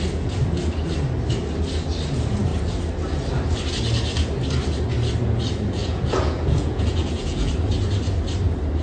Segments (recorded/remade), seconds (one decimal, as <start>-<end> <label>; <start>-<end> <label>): 0.0-5.8 recorded; 5.8-7.5 remade; 7.5-8.8 recorded